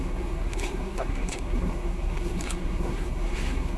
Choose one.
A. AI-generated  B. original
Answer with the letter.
A